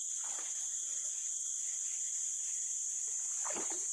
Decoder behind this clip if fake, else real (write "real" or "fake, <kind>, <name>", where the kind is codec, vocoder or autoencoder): real